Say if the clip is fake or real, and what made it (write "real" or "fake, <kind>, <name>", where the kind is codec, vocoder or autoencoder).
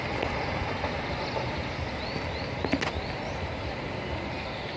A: real